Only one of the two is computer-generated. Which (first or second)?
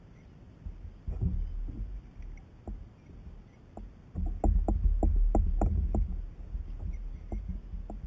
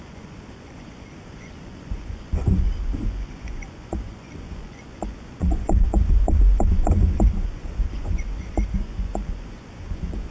second